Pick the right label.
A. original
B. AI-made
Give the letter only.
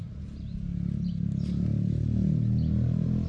A